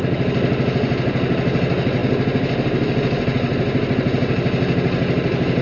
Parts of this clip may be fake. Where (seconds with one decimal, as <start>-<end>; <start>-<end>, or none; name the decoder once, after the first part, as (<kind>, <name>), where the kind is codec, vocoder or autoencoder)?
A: none